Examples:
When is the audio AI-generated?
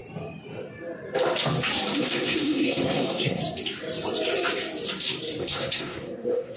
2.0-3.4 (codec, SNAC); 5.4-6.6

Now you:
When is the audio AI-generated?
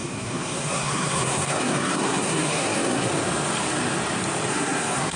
0.0-3.1 (codec, SNAC); 4.5-5.2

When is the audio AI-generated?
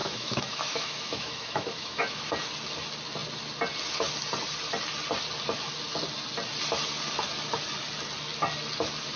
0.0-2.3 (autoencoder, DAC-VAE)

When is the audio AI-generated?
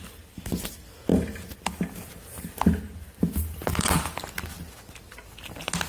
none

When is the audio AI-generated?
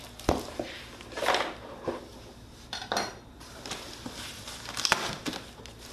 2.1-4.3 (vocoder, BigVGAN v2)